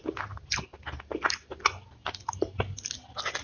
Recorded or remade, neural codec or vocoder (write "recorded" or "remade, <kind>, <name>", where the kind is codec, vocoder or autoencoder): recorded